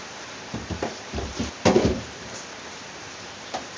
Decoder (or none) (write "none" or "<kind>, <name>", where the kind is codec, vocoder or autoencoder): vocoder, BigVGAN v2